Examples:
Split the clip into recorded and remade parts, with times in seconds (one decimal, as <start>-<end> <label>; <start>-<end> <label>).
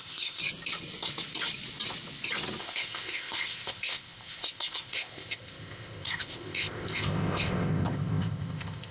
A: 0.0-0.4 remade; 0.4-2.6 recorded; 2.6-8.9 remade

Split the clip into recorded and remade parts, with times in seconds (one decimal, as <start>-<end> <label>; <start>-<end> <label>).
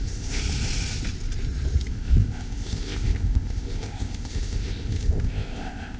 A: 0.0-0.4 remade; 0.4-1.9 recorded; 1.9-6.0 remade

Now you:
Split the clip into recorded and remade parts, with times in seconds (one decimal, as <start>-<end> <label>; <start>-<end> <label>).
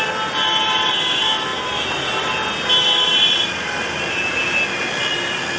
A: 0.0-5.6 recorded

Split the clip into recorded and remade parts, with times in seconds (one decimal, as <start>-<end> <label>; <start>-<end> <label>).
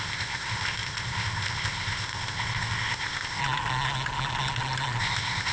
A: 0.0-3.4 remade; 3.4-5.0 recorded; 5.0-5.5 remade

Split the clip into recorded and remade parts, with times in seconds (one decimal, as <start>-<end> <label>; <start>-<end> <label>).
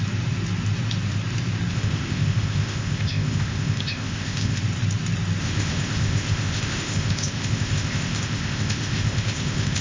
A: 0.0-1.7 recorded; 1.7-4.6 remade; 4.6-5.4 recorded; 5.4-9.8 remade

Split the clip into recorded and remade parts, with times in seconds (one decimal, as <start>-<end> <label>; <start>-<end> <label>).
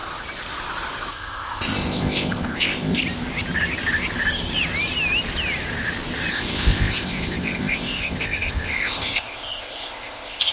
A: 0.0-1.1 recorded; 1.1-3.0 remade; 3.0-6.3 recorded; 6.3-10.5 remade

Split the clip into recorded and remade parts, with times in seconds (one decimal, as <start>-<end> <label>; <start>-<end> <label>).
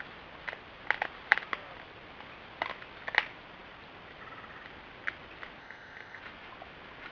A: 0.0-5.6 recorded; 5.6-6.2 remade; 6.2-7.1 recorded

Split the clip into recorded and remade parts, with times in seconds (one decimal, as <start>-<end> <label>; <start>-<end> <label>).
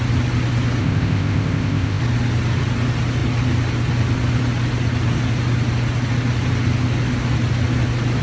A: 0.0-0.8 recorded; 0.8-2.0 remade; 2.0-8.2 recorded